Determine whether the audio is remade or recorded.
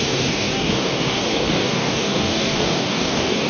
remade